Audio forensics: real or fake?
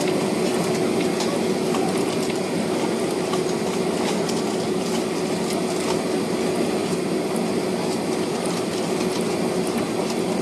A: real